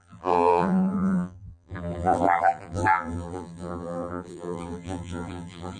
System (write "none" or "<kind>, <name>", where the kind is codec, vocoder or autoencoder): vocoder, BigVGAN v2